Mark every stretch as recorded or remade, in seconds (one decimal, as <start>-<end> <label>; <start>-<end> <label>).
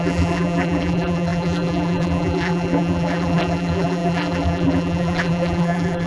0.0-6.1 remade